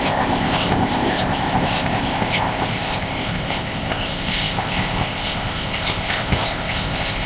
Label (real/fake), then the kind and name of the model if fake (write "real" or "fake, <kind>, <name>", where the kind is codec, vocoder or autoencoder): fake, codec, ZipCodec